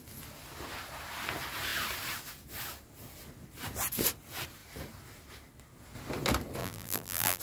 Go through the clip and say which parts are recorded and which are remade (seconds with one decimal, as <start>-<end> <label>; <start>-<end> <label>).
0.0-6.6 recorded; 6.6-7.4 remade